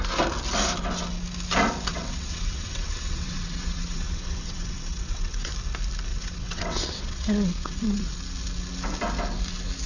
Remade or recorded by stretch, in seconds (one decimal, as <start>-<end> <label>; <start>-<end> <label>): 0.0-1.9 recorded; 1.9-5.5 remade; 5.5-6.1 recorded; 6.1-8.1 remade; 8.1-9.9 recorded